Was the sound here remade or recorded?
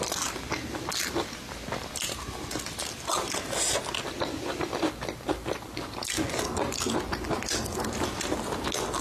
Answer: recorded